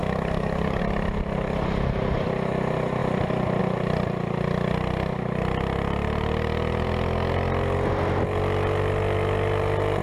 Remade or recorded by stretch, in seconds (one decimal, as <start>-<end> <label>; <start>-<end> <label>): 0.0-0.8 remade; 0.8-10.0 recorded